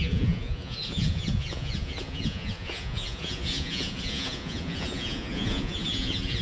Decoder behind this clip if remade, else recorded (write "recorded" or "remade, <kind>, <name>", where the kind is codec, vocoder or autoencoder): remade, vocoder, Vocos